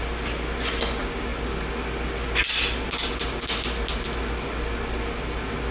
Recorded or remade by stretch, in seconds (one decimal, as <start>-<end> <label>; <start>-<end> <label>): 0.0-5.7 recorded